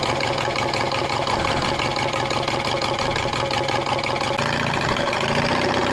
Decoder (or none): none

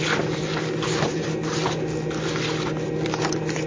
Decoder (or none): none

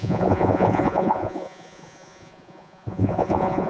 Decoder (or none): vocoder, Vocos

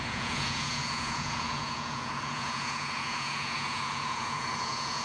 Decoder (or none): vocoder, Vocos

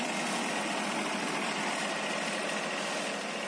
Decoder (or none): none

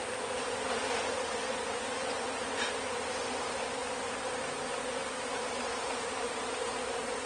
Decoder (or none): none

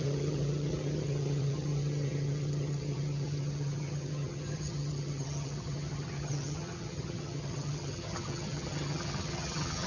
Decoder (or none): vocoder, HiFi-GAN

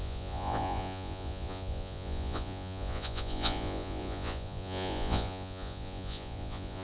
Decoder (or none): vocoder, Vocos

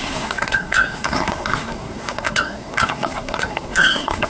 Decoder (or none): codec, SNAC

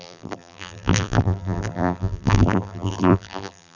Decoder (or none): vocoder, BigVGAN v2